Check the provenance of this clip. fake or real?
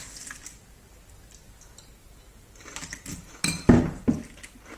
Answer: real